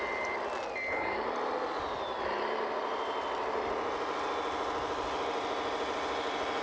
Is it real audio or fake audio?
real